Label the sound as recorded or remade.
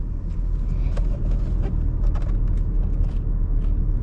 recorded